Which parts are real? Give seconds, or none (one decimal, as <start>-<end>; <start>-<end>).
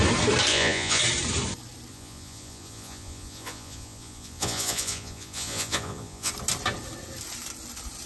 0.0-0.5; 1.0-1.9; 6.3-8.1